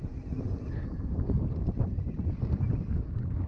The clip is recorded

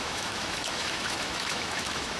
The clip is remade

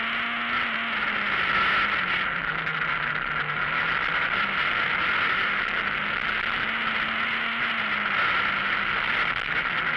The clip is recorded